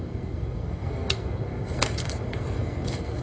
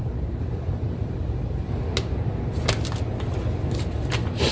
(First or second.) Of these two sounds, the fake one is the first